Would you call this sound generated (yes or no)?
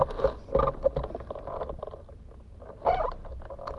no